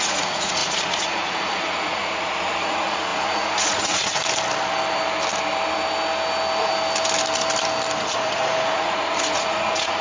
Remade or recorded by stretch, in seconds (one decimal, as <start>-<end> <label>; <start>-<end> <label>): 0.0-4.2 remade; 4.2-8.0 recorded; 8.0-10.0 remade